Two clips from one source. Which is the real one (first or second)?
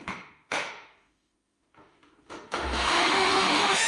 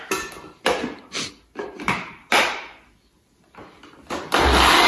second